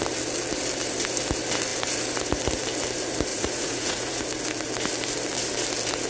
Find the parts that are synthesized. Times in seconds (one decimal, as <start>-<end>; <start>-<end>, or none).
3.3-4.2